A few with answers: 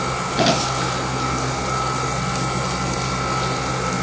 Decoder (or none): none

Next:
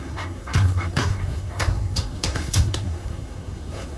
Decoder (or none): codec, SNAC